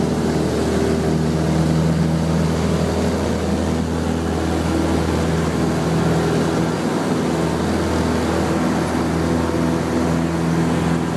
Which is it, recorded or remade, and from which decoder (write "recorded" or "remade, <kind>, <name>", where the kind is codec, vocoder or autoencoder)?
recorded